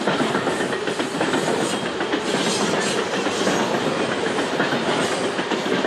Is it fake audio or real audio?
fake